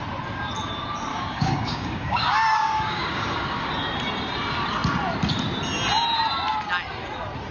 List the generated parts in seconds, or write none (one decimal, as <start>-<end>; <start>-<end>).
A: 1.1-3.7